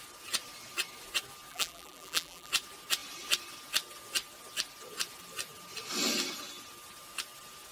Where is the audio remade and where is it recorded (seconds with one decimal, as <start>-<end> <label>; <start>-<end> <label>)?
0.0-1.5 recorded; 1.5-2.5 remade; 2.5-7.7 recorded